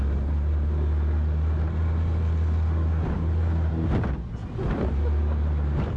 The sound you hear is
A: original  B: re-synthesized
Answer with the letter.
A